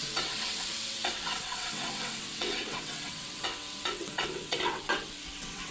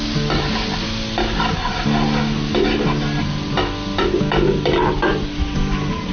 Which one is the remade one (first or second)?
first